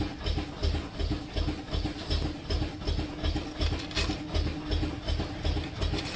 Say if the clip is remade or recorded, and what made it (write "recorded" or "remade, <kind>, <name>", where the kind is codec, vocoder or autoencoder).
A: recorded